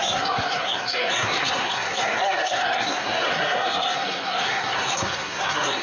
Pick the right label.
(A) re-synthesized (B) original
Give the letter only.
A